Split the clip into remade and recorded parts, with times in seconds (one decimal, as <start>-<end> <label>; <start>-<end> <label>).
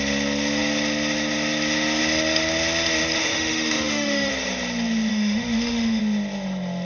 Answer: 0.0-3.2 recorded; 3.2-4.3 remade; 4.3-5.1 recorded; 5.1-6.0 remade; 6.0-6.8 recorded